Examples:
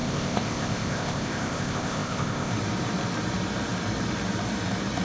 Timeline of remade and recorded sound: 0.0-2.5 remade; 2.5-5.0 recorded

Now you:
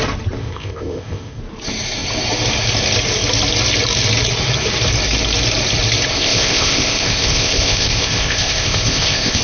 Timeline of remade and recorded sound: 0.0-0.4 recorded; 0.4-1.4 remade; 1.4-6.1 recorded; 6.1-9.4 remade

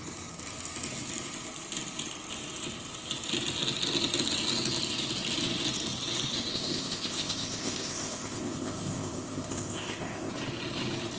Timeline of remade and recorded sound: 0.0-6.5 recorded; 6.5-10.3 remade; 10.3-11.2 recorded

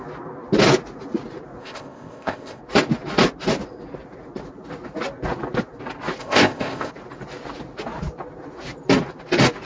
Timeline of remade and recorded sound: 0.0-1.6 recorded; 1.6-2.6 remade; 2.6-6.2 recorded; 6.2-6.9 remade; 6.9-9.6 recorded

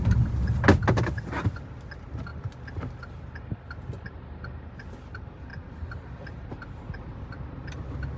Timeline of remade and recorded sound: 0.0-8.2 recorded

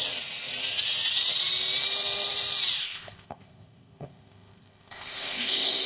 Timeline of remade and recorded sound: 0.0-2.8 recorded; 2.8-5.9 remade

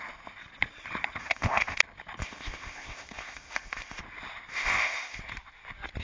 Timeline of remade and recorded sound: 0.0-1.2 recorded; 1.2-1.8 remade; 1.8-2.2 recorded; 2.2-4.0 remade; 4.0-4.5 recorded; 4.5-5.2 remade; 5.2-6.0 recorded